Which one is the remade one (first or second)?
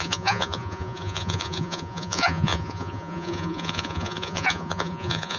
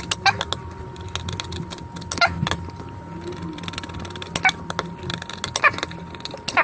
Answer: first